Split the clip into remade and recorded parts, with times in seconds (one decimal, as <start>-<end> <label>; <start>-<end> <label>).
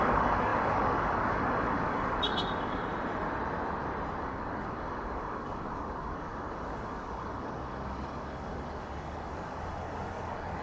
0.0-2.9 remade; 2.9-4.2 recorded; 4.2-10.6 remade